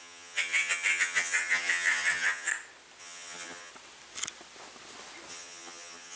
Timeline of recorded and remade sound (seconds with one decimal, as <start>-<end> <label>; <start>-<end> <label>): 0.0-2.5 remade; 2.5-3.0 recorded; 3.0-3.7 remade; 3.7-5.3 recorded; 5.3-6.2 remade